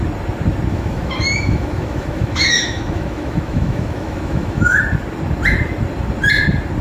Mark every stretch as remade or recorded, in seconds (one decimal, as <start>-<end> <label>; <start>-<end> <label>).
0.0-0.7 recorded; 0.7-4.8 remade; 4.8-6.8 recorded